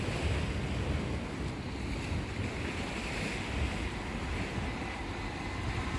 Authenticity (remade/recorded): recorded